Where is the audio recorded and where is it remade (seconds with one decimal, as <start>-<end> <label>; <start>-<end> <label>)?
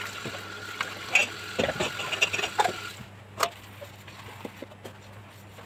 0.0-5.7 recorded